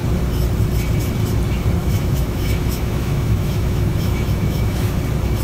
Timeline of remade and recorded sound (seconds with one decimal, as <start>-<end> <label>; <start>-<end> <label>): 0.0-1.8 recorded; 1.8-5.0 remade; 5.0-5.4 recorded